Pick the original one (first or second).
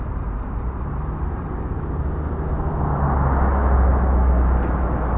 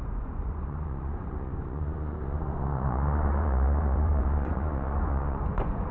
first